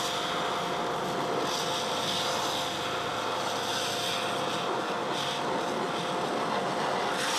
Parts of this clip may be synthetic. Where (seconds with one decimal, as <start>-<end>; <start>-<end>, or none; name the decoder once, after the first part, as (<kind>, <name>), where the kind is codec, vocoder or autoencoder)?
none